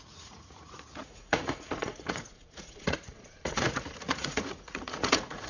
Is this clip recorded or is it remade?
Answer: remade